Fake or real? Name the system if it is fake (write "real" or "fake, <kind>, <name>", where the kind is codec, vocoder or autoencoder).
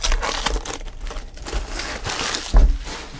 real